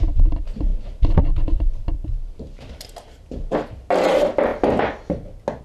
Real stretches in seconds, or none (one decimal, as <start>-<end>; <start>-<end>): 0.0-5.6